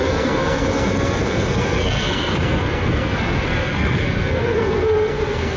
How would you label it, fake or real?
fake